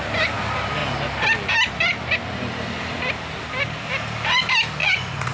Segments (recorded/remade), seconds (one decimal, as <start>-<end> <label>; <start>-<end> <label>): 0.0-4.8 recorded; 4.8-5.3 remade